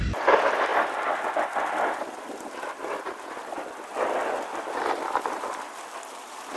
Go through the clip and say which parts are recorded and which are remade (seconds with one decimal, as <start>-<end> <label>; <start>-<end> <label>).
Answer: 0.0-6.6 recorded